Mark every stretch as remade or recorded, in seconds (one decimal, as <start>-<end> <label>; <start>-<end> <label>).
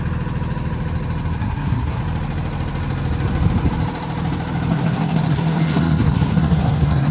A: 0.0-1.4 recorded; 1.4-2.0 remade; 2.0-4.7 recorded; 4.7-7.1 remade